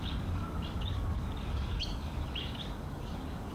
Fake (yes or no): yes